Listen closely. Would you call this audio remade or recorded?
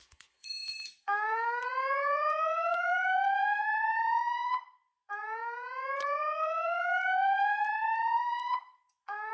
remade